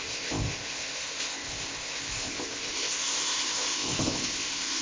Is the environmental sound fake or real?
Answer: fake